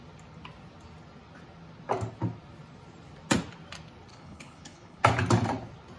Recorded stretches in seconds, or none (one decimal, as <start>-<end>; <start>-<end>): 0.0-4.1; 5.0-6.0